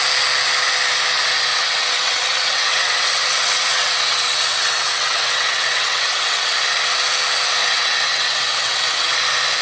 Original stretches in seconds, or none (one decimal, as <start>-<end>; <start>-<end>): 0.0-1.5; 6.6-7.6; 9.2-9.6